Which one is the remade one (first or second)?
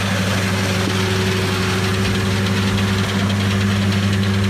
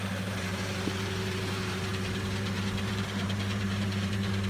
second